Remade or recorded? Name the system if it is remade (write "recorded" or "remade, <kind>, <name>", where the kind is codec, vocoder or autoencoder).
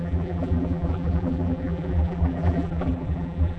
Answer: remade, vocoder, BigVGAN v2